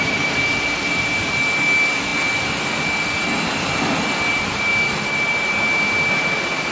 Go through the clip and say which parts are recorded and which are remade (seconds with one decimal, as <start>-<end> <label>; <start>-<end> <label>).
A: 0.0-6.7 recorded